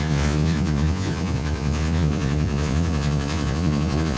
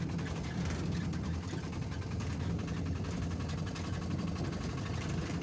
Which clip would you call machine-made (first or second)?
first